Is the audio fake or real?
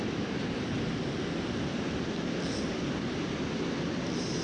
real